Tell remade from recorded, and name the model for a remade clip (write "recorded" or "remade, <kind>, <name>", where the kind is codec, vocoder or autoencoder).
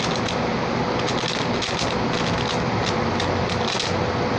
recorded